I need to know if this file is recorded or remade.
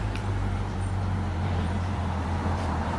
remade